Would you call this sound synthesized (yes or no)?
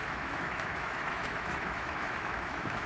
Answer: yes